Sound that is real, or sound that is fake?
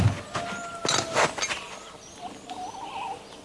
real